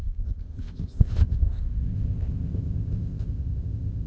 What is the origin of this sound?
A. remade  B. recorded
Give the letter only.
A